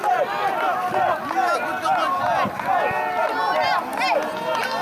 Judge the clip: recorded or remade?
recorded